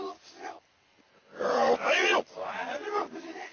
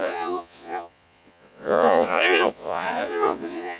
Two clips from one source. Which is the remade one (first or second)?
second